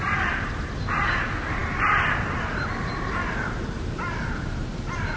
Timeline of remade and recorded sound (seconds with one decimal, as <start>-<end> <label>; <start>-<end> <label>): 0.0-5.2 recorded